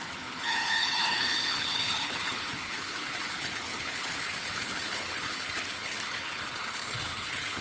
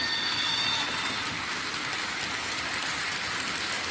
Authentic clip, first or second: second